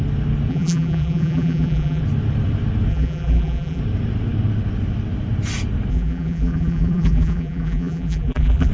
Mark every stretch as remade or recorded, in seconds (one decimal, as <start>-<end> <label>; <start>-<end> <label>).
0.0-0.5 recorded; 0.5-2.0 remade; 2.0-2.9 recorded; 2.9-3.8 remade; 3.8-5.9 recorded; 5.9-8.7 remade